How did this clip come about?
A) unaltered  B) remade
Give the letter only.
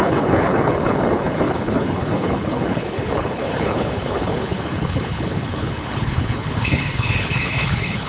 B